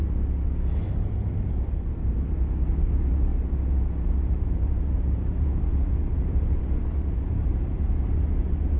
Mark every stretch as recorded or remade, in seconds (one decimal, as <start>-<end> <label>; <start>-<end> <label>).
0.0-1.7 recorded; 1.7-3.3 remade; 3.3-4.4 recorded; 4.4-8.8 remade